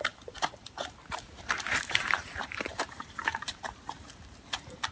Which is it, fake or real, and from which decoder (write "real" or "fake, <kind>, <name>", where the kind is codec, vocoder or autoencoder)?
fake, vocoder, BigVGAN v2